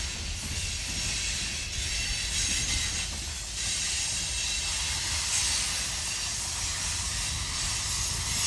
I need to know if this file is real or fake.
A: real